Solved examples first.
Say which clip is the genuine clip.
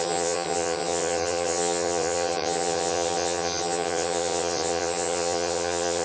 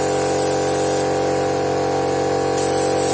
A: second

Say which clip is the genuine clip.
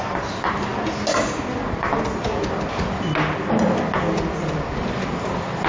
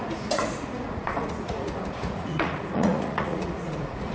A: first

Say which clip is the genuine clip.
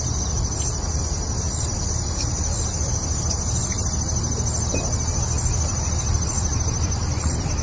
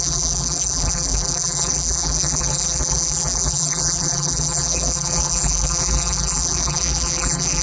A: first